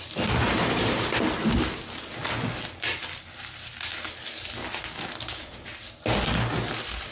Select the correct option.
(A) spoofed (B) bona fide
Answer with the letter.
B